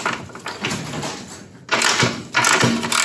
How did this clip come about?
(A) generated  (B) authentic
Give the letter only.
B